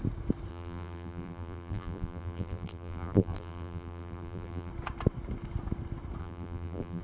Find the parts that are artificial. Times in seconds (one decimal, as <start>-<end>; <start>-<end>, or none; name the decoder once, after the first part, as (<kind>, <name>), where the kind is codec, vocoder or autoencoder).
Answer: 0.5-4.7 (vocoder, BigVGAN v2); 6.2-7.0